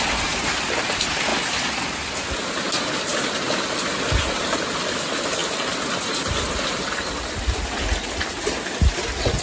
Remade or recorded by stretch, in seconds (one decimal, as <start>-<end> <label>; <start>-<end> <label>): 0.0-9.4 recorded